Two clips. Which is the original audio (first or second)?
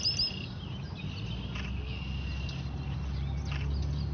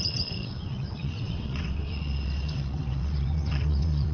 first